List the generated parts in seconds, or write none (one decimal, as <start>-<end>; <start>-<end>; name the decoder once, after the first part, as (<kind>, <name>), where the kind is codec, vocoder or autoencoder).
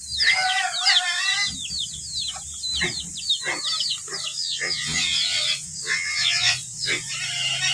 4.3-7.1 (vocoder, WaveNeXt)